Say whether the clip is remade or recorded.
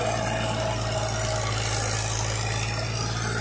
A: recorded